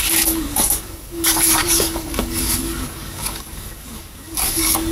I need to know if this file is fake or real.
fake